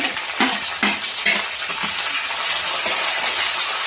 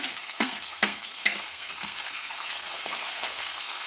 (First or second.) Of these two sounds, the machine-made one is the second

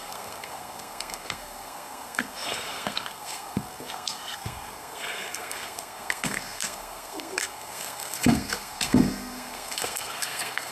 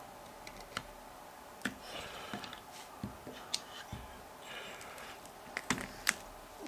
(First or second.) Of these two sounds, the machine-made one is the first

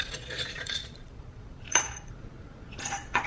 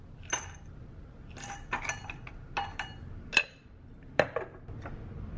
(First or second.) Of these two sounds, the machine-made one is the first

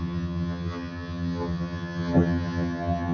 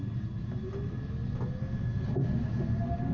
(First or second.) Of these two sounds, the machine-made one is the first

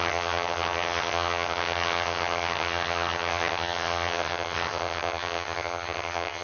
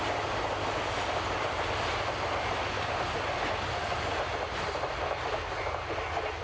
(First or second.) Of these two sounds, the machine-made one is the first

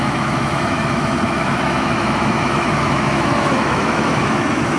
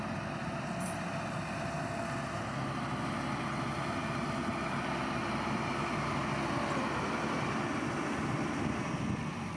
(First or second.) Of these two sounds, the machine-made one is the first